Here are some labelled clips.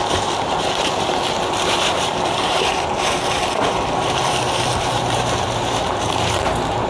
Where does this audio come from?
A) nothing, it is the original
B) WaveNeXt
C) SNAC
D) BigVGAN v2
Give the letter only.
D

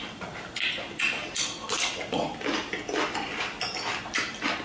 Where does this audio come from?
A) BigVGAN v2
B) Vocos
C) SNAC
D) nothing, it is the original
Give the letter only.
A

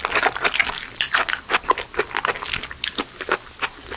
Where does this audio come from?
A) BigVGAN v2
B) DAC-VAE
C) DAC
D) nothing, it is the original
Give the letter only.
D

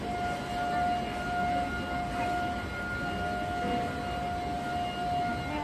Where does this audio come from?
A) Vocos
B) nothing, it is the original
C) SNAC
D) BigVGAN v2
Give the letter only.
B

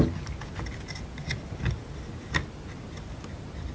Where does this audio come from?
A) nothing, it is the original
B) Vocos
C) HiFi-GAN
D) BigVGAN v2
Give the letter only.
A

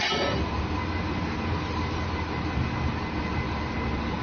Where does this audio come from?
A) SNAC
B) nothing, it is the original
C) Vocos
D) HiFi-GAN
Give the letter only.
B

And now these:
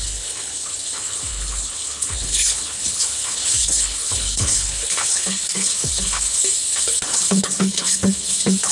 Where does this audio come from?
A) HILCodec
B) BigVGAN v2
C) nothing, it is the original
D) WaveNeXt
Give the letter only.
A